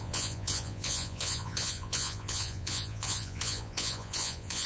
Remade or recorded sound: remade